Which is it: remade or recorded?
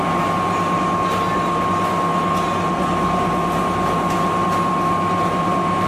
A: recorded